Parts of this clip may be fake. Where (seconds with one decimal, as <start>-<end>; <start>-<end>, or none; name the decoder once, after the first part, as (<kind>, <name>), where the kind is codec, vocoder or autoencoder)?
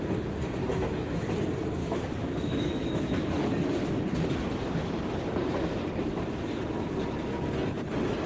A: 0.7-1.3 (autoencoder, DAC-VAE); 1.8-3.2